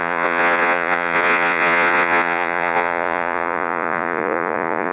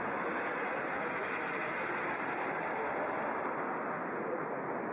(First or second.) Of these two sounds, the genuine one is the second